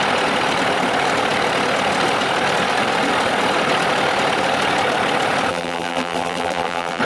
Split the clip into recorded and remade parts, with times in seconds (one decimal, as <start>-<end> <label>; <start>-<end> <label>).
0.0-5.5 recorded; 5.5-7.0 remade